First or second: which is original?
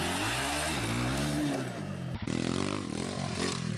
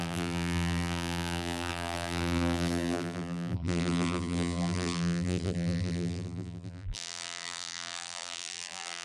first